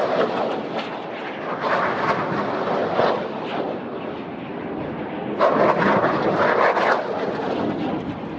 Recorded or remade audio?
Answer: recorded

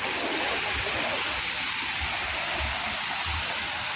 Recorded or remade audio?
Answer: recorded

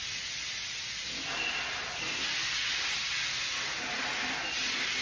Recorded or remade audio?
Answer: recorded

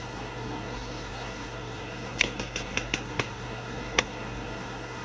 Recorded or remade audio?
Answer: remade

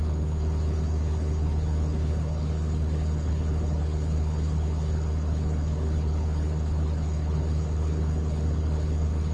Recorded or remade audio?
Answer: remade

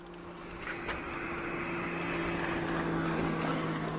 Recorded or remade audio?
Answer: recorded